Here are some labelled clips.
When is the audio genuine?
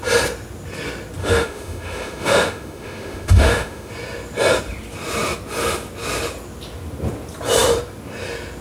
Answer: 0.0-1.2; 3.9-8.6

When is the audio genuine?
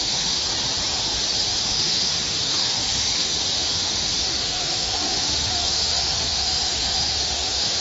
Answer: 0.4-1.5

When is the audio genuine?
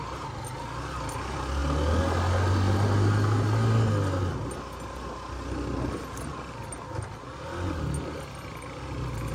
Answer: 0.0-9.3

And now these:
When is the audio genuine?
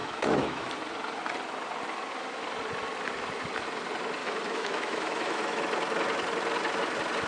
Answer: 0.7-4.2; 5.6-7.3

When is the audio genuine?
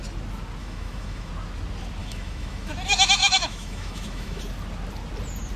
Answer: 0.0-0.6; 1.3-2.0; 2.7-3.2; 4.4-5.6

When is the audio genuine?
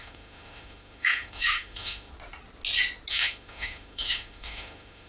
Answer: 2.1-3.1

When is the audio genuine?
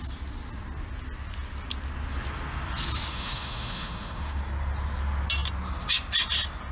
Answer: 0.0-3.1; 4.4-6.7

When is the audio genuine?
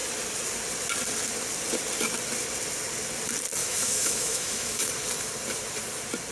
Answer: 0.0-3.6; 4.9-6.3